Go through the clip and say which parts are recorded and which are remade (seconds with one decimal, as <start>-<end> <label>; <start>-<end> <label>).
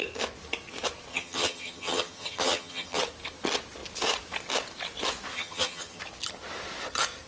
0.0-1.1 recorded; 1.1-3.0 remade; 3.0-5.3 recorded; 5.3-6.0 remade; 6.0-7.3 recorded